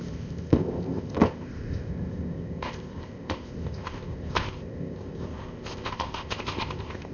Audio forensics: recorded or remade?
remade